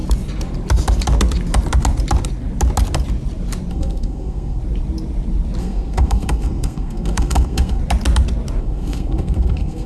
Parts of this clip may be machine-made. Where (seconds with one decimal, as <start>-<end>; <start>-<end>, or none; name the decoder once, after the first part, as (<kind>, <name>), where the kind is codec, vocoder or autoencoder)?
3.7-4.6 (codec, SNAC); 5.6-7.8; 8.6-9.9